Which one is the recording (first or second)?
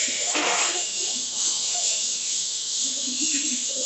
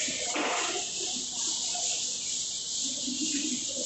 second